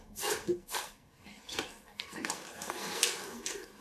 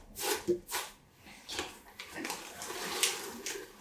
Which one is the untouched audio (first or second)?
second